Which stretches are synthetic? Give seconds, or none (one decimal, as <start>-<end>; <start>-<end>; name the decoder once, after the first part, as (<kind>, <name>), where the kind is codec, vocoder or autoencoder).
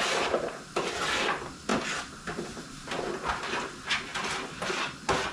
none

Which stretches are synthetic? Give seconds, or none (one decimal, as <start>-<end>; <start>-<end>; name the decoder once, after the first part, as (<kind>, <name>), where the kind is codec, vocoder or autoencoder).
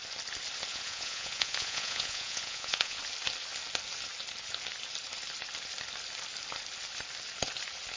0.7-3.0 (vocoder, Vocos)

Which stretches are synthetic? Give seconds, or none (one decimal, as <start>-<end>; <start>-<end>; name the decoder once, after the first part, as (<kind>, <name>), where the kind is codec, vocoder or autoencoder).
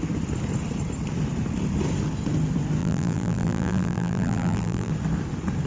2.8-4.9 (vocoder, BigVGAN v2)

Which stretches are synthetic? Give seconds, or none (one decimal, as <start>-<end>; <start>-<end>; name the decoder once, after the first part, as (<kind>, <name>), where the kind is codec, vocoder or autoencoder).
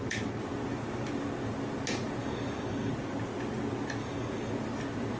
2.2-2.9 (codec, DAC); 4.0-4.5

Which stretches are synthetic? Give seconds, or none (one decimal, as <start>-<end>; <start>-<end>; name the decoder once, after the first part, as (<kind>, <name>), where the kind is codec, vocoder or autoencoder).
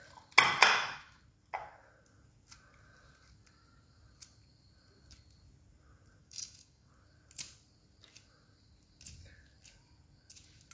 0.6-1.2 (autoencoder, DAC-VAE); 6.2-6.9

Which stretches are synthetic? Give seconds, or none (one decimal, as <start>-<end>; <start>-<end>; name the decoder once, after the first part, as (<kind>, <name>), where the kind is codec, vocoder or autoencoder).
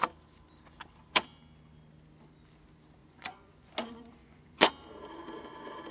3.0-3.7 (vocoder, Vocos); 4.2-4.7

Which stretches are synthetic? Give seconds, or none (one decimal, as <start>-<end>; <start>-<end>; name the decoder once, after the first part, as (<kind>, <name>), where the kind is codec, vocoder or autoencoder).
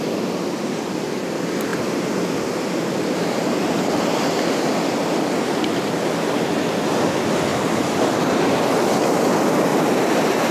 7.5-8.7 (vocoder, BigVGAN v2); 9.7-10.5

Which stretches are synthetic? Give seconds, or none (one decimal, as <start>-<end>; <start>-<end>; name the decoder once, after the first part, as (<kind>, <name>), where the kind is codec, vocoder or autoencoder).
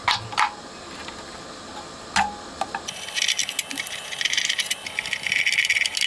none